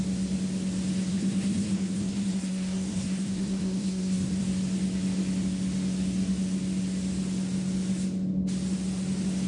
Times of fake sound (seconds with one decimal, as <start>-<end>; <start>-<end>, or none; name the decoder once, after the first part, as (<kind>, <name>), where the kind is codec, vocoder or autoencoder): 1.1-4.4 (codec, SNAC)

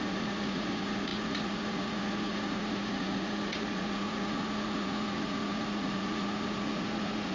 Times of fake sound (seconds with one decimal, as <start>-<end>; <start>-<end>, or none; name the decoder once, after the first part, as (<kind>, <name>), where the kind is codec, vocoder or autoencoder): 0.0-7.3 (vocoder, Vocos)